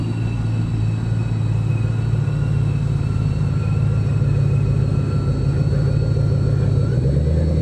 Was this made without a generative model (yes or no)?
yes